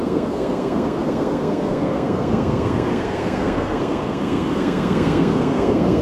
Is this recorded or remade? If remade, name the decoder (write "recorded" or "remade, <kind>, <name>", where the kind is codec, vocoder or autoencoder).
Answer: remade, codec, SNAC